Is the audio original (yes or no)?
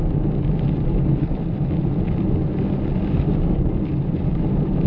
yes